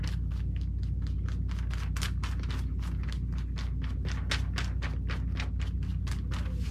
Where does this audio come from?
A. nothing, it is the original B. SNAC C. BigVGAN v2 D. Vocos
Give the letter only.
A